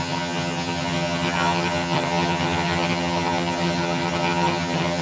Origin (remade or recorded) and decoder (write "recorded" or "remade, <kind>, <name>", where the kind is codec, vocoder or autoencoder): remade, vocoder, HiFi-GAN